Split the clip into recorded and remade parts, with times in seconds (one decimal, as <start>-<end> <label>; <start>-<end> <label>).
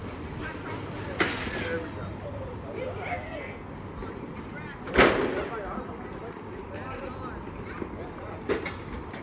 0.0-3.1 recorded; 3.1-3.7 remade; 3.7-9.2 recorded